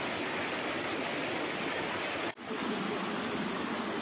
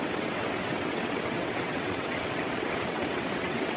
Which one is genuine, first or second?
first